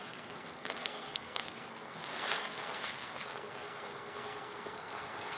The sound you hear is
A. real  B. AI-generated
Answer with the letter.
B